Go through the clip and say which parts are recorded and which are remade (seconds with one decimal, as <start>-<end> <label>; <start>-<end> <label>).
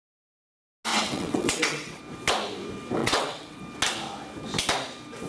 0.0-0.9 recorded; 0.9-2.0 remade; 2.0-3.0 recorded; 3.0-3.6 remade; 3.6-5.3 recorded